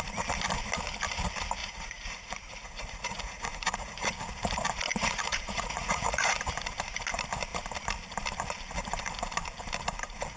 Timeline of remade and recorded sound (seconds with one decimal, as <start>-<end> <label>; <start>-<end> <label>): 0.0-1.6 recorded; 1.6-4.1 remade; 4.1-4.9 recorded; 4.9-6.4 remade; 6.4-10.4 recorded